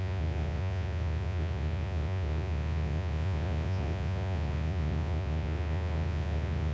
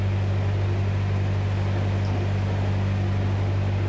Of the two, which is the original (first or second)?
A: second